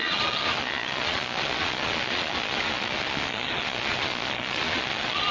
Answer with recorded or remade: remade